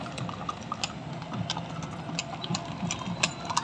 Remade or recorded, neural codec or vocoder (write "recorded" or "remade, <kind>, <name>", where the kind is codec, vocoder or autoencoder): recorded